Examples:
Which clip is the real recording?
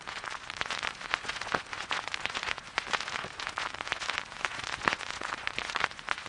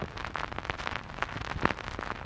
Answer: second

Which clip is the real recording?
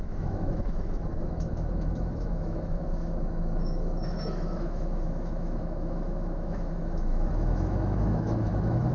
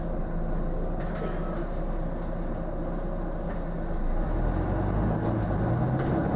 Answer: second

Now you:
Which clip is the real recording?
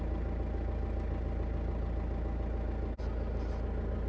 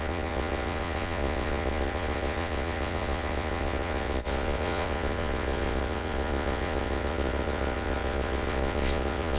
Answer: first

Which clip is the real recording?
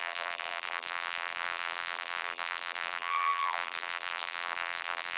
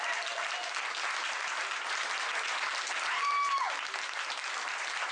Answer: second